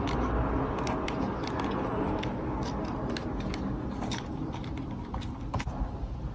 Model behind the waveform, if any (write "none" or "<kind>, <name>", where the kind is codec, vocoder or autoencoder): none